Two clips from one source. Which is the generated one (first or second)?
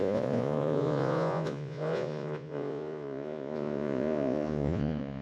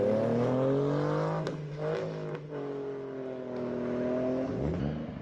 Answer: first